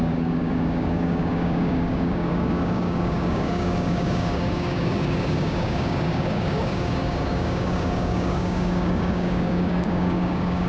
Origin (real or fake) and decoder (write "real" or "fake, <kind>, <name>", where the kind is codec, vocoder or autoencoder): fake, codec, DAC